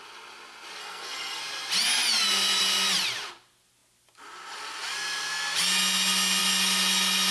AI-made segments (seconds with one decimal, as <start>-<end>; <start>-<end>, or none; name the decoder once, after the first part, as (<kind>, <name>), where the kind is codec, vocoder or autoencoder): 0.8-1.4 (codec, SNAC)